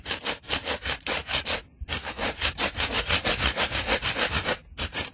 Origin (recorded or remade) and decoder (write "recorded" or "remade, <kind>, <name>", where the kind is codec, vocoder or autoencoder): recorded